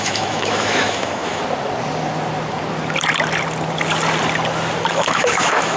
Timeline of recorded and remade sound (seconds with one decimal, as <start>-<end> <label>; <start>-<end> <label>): 0.0-1.4 remade; 1.4-4.9 recorded; 4.9-5.8 remade